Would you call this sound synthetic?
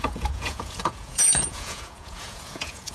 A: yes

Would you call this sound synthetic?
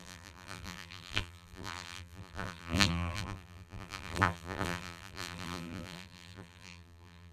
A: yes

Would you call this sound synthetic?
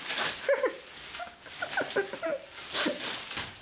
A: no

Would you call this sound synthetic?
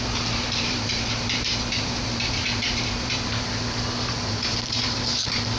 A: yes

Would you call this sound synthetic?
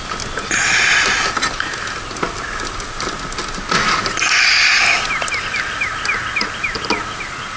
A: no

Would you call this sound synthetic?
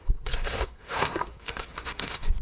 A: yes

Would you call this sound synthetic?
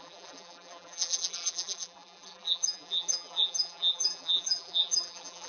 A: yes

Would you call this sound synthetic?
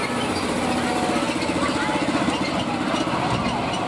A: no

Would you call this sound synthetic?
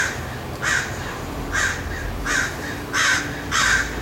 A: no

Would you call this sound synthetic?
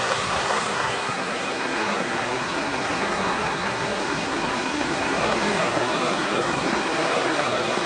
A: yes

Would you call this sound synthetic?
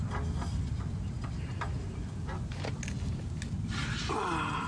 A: no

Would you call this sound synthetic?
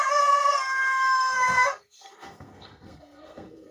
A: yes